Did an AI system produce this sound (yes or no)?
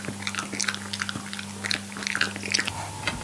no